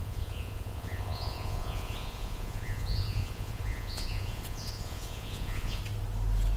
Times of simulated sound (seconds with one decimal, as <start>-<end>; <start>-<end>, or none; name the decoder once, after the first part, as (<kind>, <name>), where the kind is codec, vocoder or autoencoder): 0.0-5.8 (vocoder, Vocos)